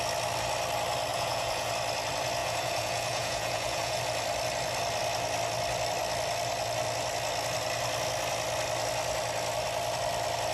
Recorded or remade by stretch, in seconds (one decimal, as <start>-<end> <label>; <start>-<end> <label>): 0.0-1.1 recorded; 1.1-1.7 remade; 1.7-2.4 recorded; 2.4-4.0 remade; 4.0-10.5 recorded